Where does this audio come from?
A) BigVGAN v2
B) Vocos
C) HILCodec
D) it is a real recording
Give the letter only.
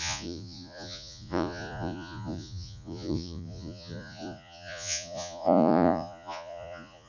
B